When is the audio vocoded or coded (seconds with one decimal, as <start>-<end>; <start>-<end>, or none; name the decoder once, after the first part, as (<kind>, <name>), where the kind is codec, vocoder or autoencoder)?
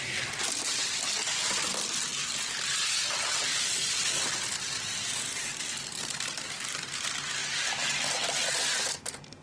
none